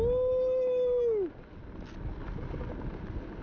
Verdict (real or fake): real